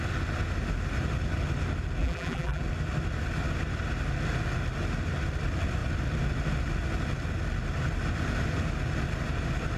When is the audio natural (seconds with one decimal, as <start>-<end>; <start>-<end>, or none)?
0.0-2.0; 2.6-9.8